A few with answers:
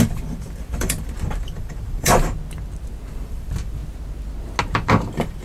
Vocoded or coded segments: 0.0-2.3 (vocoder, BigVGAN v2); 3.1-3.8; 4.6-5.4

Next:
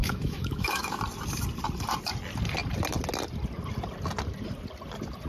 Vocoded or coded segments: 0.0-1.0 (autoencoder, DAC-VAE)

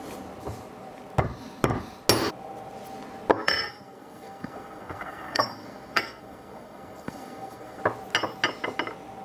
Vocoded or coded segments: 3.3-7.8 (codec, SNAC)

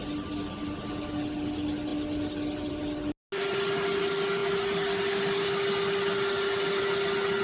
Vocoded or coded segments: none

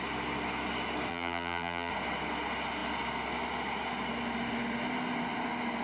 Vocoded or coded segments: 1.1-1.9 (vocoder, BigVGAN v2)

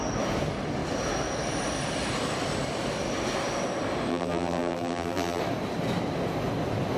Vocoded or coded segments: 4.1-5.4 (vocoder, BigVGAN v2)

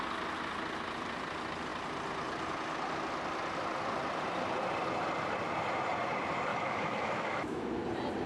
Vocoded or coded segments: 6.5-7.8 (autoencoder, DAC-VAE)